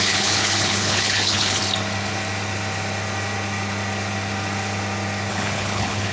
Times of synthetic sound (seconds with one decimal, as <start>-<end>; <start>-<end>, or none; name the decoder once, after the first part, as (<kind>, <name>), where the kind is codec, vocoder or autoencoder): 0.0-1.6 (codec, HILCodec); 5.3-6.1